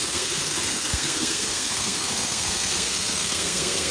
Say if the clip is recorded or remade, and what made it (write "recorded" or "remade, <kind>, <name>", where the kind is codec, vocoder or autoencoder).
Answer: remade, codec, SNAC